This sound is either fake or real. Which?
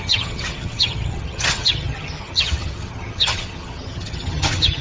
fake